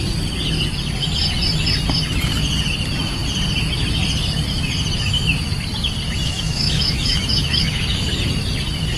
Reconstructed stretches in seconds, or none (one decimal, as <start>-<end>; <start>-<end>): 6.2-8.1